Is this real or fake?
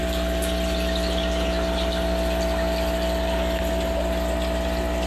real